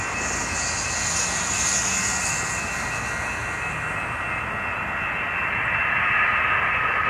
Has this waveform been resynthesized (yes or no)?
no